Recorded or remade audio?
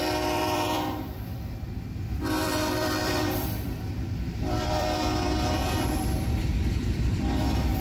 remade